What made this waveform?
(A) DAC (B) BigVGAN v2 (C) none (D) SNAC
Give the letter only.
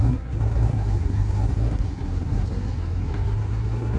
D